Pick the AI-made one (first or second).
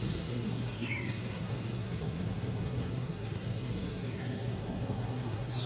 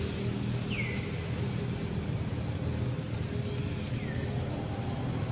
first